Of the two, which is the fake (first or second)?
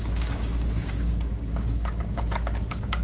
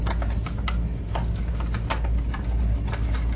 first